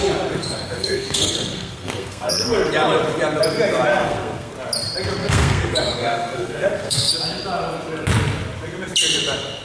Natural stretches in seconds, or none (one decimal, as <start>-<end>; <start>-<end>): 0.0-0.4; 2.7-3.9; 4.5-5.2; 7.1-9.6